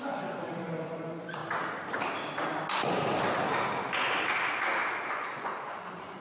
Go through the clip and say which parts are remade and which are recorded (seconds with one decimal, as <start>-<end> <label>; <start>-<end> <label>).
0.0-1.4 remade; 1.4-5.1 recorded; 5.1-6.2 remade